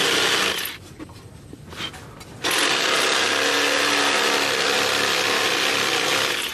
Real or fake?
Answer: real